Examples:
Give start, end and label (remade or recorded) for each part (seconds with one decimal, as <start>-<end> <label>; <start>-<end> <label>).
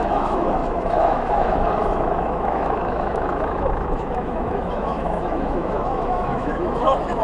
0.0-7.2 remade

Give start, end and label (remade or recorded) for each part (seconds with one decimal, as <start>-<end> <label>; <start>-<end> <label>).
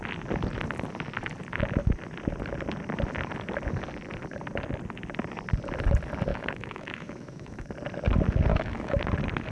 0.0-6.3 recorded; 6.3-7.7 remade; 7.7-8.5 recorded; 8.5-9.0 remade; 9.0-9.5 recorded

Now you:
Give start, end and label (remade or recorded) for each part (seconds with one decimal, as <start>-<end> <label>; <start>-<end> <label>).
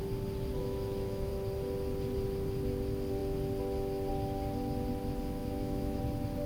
0.0-0.6 recorded; 0.6-1.3 remade; 1.3-5.4 recorded; 5.4-6.0 remade; 6.0-6.5 recorded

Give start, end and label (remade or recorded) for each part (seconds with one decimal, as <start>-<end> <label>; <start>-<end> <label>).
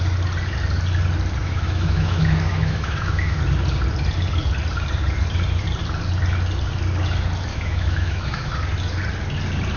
0.0-1.4 recorded; 1.4-3.4 remade; 3.4-7.5 recorded; 7.5-8.5 remade; 8.5-9.8 recorded